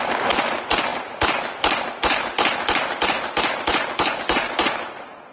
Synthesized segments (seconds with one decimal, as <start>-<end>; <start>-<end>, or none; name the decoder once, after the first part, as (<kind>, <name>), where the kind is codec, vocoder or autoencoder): none